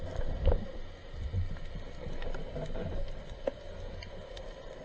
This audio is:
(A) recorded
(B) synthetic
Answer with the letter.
A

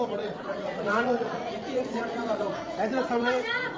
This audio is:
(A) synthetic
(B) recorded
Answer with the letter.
A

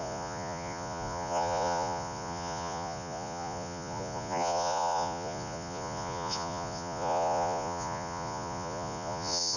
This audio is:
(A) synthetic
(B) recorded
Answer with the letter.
A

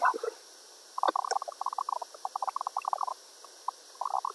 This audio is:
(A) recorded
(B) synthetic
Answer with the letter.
A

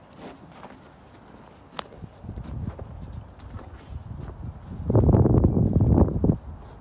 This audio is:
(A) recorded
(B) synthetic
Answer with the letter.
A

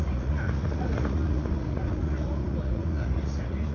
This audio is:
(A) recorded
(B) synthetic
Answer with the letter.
B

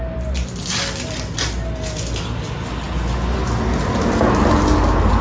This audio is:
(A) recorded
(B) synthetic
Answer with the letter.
A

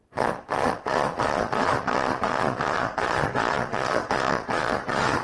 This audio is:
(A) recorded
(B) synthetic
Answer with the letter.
B